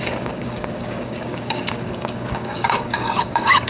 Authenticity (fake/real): fake